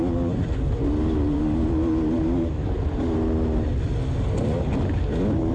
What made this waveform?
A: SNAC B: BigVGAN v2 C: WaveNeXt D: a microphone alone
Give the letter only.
D